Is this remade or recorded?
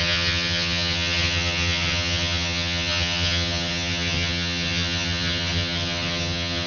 remade